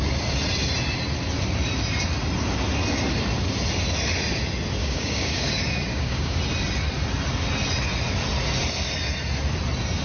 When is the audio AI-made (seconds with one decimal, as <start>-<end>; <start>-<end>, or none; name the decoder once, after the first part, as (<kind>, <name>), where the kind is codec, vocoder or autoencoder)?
4.8-5.5 (codec, DAC); 5.9-6.4

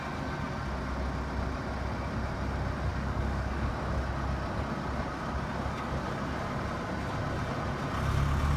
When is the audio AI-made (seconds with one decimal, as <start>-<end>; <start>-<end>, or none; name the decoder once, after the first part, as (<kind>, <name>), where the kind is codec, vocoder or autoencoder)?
2.9-3.7 (codec, DAC)

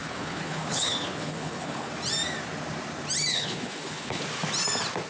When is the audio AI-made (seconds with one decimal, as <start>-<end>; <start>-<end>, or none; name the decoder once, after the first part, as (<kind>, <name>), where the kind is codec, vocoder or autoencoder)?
0.0-1.9 (codec, HILCodec); 3.3-4.2

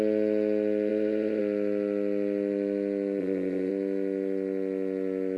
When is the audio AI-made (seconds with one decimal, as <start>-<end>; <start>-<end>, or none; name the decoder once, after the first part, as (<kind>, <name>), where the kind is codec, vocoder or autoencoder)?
0.9-1.4 (vocoder, Vocos); 3.2-3.7